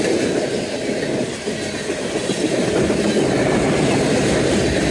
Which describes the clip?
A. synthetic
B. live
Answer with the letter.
B